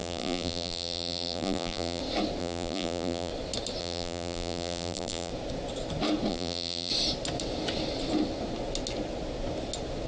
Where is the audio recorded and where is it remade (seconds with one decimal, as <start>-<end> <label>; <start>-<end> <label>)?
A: 0.0-2.0 remade; 2.0-2.4 recorded; 2.4-3.3 remade; 3.3-3.8 recorded; 3.8-5.3 remade; 5.3-6.3 recorded; 6.3-6.9 remade; 6.9-10.1 recorded